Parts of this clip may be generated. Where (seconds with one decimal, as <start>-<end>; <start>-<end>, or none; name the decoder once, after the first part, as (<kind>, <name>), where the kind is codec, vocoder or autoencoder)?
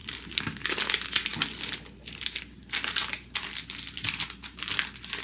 none